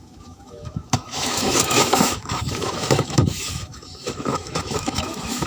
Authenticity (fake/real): fake